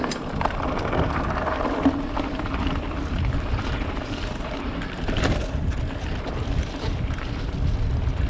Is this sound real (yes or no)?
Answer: yes